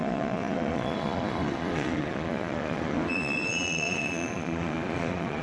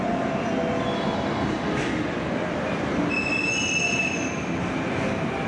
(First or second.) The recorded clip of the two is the second